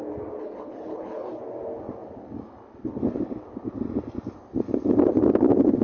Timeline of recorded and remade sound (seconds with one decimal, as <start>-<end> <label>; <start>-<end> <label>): 0.0-0.4 recorded; 0.4-1.4 remade; 1.4-5.8 recorded